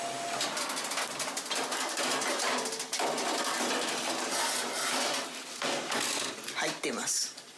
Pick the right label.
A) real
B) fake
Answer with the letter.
A